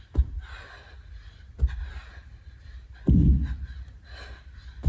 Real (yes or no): yes